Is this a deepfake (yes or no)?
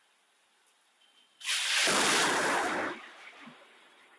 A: no